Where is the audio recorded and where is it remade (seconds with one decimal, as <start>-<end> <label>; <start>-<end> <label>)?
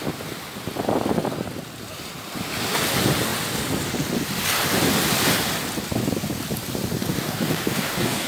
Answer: 0.0-7.1 recorded; 7.1-8.3 remade